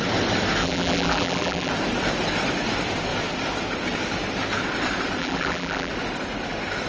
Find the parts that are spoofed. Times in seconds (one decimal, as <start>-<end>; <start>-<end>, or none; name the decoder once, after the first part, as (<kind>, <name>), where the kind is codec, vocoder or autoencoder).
0.6-1.7 (vocoder, BigVGAN v2); 5.2-5.9